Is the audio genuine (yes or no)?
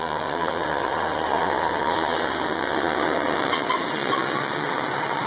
no